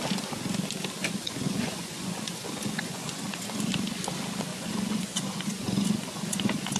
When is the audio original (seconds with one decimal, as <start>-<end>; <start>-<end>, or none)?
0.0-1.0; 3.7-4.5

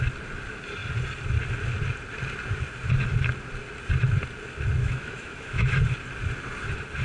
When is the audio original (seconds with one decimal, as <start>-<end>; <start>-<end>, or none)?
0.0-4.8; 5.7-7.0

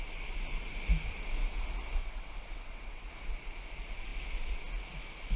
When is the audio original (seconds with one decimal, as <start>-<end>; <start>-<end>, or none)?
0.0-2.0; 3.1-5.4

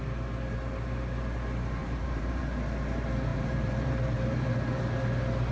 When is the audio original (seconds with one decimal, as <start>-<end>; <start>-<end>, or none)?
0.0-1.8; 2.4-3.3; 4.8-5.5

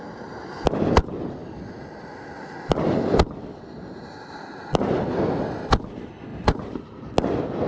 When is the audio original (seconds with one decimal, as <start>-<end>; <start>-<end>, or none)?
0.0-6.3; 7.1-7.7

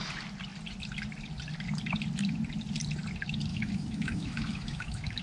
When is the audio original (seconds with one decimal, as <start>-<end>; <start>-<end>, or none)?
0.0-3.5

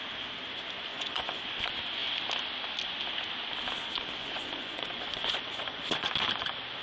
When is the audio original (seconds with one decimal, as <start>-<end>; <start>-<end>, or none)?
0.0-0.9; 1.4-4.2; 6.1-6.8